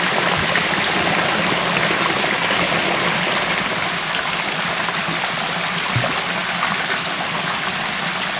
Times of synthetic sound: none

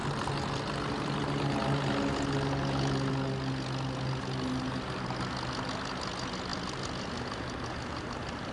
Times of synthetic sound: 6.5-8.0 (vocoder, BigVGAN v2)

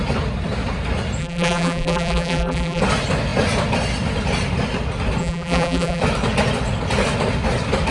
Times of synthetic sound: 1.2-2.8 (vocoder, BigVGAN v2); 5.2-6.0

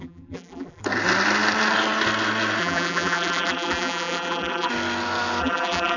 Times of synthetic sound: 0.0-0.8 (vocoder, BigVGAN v2); 2.6-4.7; 5.4-6.0

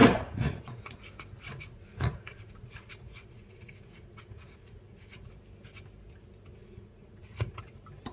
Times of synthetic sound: 0.0-1.0 (vocoder, Vocos); 1.5-5.3; 6.6-7.6

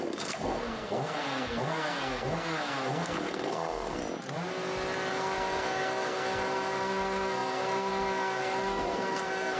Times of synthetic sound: 0.0-4.0 (codec, SNAC); 5.1-9.6